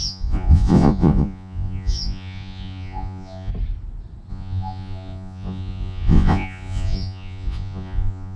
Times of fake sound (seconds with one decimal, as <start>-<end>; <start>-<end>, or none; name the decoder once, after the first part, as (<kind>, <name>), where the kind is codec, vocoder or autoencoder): 0.0-3.5 (vocoder, Vocos); 4.3-8.4